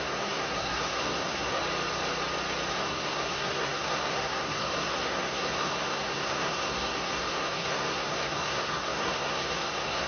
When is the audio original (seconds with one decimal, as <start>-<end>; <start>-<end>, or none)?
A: 1.6-2.7